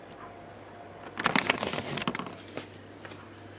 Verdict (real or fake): real